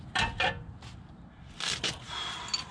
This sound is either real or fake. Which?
real